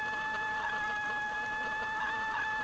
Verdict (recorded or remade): recorded